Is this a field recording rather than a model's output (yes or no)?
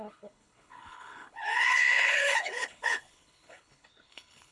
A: no